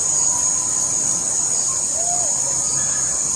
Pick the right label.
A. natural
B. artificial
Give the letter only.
A